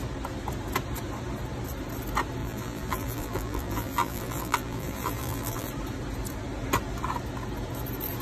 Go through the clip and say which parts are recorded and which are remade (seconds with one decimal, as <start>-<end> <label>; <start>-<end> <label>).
0.0-2.4 recorded; 2.4-5.7 remade; 5.7-8.2 recorded